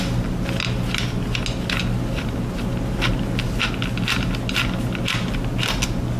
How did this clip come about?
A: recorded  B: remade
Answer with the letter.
A